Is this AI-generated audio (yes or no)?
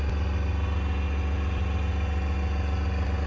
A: no